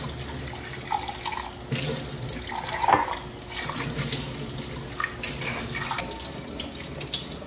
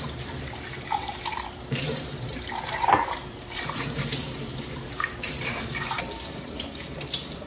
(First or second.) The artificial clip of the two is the second